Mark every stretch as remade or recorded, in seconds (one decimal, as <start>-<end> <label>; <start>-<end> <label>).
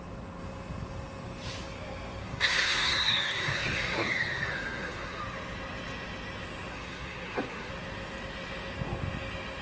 0.0-2.2 recorded; 2.2-5.2 remade; 5.2-6.7 recorded; 6.7-7.7 remade; 7.7-9.6 recorded